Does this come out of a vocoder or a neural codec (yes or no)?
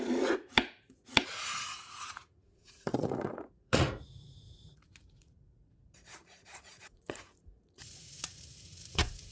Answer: yes